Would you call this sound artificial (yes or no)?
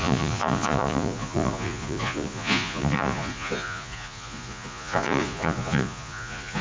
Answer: yes